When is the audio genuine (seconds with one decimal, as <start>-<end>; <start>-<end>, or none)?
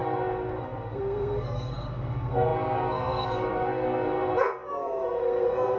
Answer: none